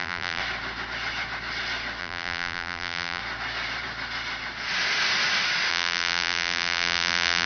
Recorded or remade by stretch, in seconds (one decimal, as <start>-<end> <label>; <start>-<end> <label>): 0.0-0.4 remade; 0.4-2.0 recorded; 2.0-3.2 remade; 3.2-5.7 recorded; 5.7-7.5 remade